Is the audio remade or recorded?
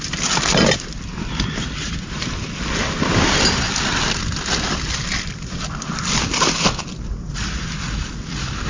recorded